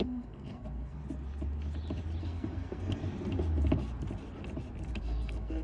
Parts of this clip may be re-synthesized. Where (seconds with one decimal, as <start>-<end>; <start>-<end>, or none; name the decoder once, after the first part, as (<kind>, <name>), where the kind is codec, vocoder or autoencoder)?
0.0-1.0 (codec, SNAC); 2.2-3.0; 5.0-5.6